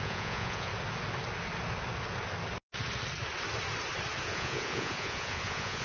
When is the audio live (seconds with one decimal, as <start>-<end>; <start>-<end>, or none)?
0.7-4.2